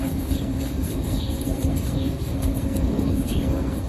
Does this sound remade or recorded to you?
remade